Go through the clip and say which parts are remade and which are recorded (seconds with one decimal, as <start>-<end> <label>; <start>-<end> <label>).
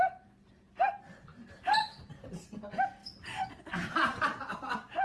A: 0.0-3.0 remade; 3.0-3.6 recorded; 3.6-5.0 remade